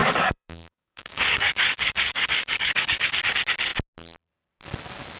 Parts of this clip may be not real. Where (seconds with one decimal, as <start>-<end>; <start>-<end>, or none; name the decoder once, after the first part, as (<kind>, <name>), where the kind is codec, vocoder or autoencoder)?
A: 0.0-3.1 (codec, DAC)

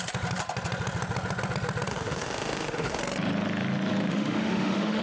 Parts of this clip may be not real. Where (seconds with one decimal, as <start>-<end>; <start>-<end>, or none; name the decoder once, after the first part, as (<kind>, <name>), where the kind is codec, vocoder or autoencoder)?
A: 1.9-3.0 (autoencoder, DAC-VAE); 4.1-5.0

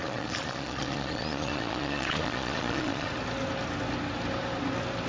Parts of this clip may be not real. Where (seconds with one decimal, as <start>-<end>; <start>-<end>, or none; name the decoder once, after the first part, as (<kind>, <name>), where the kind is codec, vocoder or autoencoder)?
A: 0.0-3.1 (vocoder, Vocos)

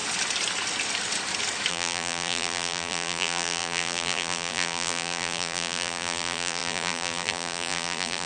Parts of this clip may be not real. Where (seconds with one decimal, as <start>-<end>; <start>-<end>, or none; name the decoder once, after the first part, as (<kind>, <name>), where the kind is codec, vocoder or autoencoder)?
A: 1.7-8.3 (vocoder, BigVGAN v2)